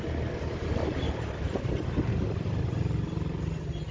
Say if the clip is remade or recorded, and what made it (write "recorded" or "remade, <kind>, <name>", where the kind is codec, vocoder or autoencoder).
recorded